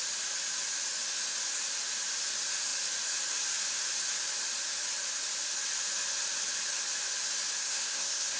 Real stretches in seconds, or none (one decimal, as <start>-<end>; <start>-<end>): 0.0-7.6